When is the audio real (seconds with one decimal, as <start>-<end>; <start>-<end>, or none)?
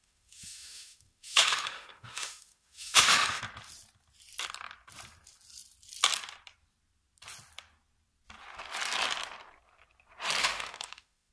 3.4-10.4